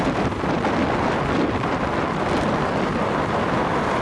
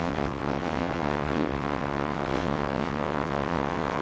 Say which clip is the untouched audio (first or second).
first